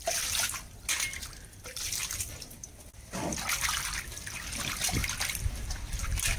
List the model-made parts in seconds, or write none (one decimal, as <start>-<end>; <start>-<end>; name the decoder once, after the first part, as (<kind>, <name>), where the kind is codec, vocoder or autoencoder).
0.0-6.4 (vocoder, BigVGAN v2)